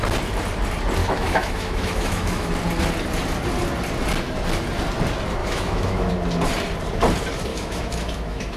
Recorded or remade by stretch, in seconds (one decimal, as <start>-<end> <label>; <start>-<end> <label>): 0.0-1.0 recorded; 1.0-2.5 remade; 2.5-5.4 recorded; 5.4-6.1 remade; 6.1-7.5 recorded; 7.5-8.6 remade